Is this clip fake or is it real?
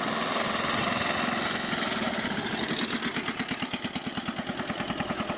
real